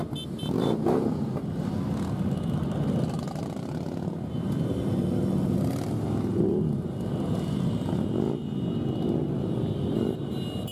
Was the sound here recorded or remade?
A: recorded